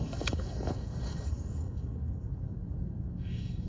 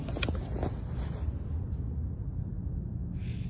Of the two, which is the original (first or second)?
second